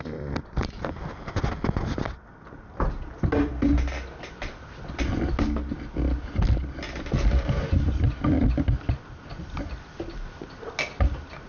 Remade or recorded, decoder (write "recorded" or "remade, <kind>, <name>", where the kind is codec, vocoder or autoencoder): recorded